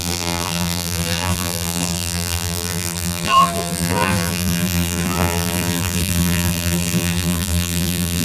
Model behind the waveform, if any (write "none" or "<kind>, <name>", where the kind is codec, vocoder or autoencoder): vocoder, BigVGAN v2